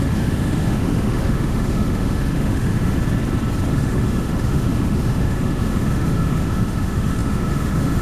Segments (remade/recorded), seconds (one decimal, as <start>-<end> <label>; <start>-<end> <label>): 0.0-3.0 remade; 3.0-3.7 recorded; 3.7-8.0 remade